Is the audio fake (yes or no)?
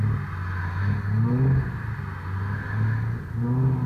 no